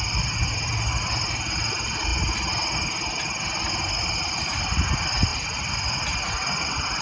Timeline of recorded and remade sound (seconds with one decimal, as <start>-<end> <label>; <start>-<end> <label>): 0.0-2.1 remade; 2.1-4.4 recorded; 4.4-7.0 remade